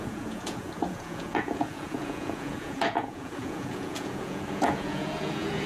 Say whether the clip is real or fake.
fake